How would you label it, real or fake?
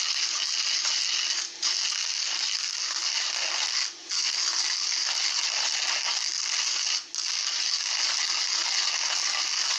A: real